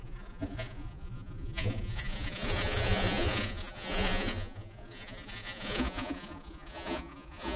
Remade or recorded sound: remade